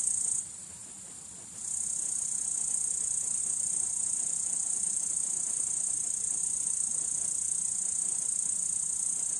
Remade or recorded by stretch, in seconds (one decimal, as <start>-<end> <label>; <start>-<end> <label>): 0.0-9.4 recorded